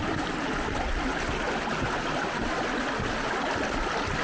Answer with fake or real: real